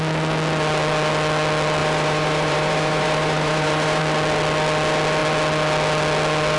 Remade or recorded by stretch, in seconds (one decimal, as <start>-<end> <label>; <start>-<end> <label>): 0.0-1.8 recorded; 1.8-4.0 remade; 4.0-6.6 recorded